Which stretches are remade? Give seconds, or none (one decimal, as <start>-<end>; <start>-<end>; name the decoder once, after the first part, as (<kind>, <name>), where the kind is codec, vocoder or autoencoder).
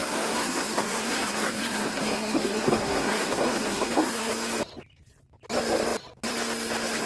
0.0-4.3 (codec, SNAC)